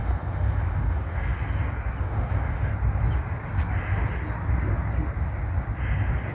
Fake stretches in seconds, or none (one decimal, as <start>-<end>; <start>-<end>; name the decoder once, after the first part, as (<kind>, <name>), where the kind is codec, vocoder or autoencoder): 0.0-1.3 (autoencoder, DAC-VAE); 2.0-2.7